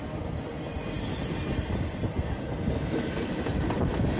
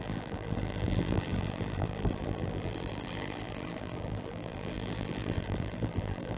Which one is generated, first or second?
second